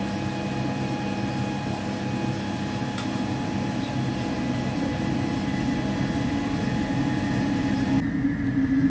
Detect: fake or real real